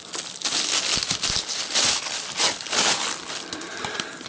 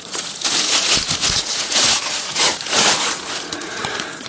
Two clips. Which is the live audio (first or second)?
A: first